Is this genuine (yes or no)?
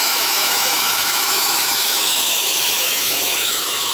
no